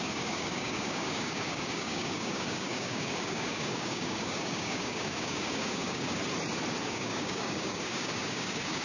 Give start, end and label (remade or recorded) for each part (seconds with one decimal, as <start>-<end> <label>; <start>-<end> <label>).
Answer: 0.0-6.2 remade; 6.2-6.8 recorded; 6.8-8.8 remade